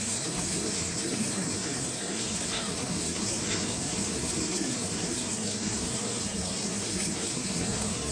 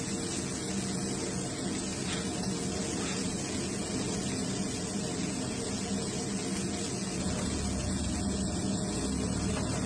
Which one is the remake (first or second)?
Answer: first